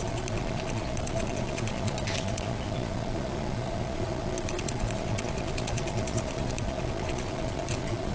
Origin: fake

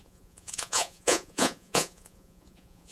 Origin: fake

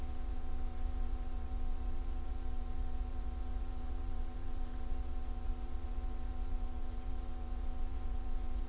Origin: fake